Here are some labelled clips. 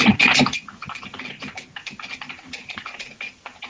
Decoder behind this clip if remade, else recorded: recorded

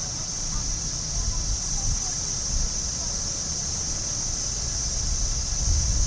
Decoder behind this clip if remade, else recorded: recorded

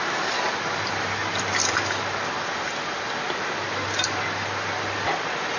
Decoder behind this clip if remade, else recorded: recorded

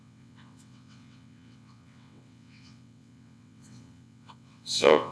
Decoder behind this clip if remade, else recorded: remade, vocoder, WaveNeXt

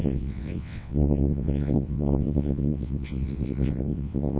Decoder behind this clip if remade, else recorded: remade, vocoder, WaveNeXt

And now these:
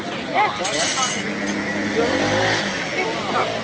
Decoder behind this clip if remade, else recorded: recorded